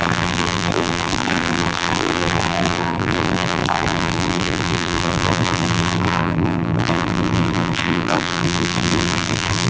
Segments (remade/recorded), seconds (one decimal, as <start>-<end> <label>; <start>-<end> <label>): 0.0-9.7 remade